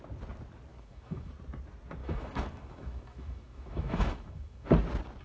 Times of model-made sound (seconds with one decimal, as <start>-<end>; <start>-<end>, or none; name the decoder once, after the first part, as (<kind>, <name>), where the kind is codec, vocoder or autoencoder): 0.7-1.3 (autoencoder, DAC-VAE); 2.0-4.7